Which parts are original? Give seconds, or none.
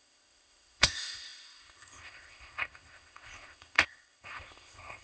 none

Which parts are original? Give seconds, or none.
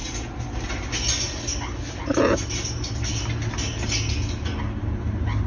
0.0-5.5